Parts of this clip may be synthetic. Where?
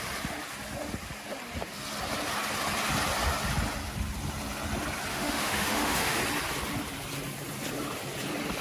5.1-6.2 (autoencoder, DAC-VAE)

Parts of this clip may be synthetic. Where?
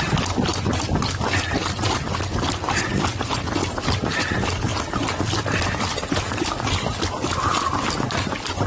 none